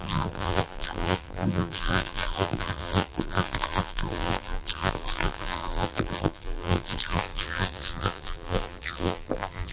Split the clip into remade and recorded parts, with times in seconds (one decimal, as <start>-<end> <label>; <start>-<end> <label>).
0.0-9.7 remade